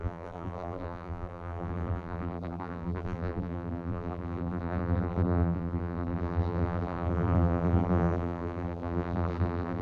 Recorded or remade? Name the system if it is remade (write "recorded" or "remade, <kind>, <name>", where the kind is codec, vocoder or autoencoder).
remade, vocoder, BigVGAN v2